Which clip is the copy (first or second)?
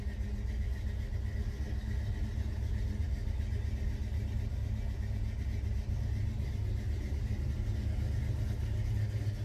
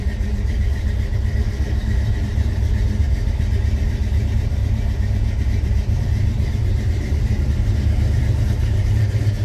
second